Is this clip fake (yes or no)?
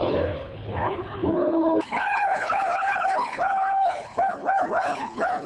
yes